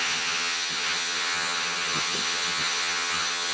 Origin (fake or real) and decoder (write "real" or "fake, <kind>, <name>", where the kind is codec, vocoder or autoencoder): fake, vocoder, HiFi-GAN